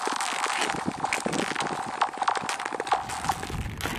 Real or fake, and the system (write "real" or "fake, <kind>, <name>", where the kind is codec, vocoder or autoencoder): real